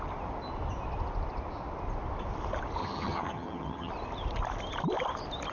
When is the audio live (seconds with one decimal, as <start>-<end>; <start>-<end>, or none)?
0.0-2.8; 3.9-5.5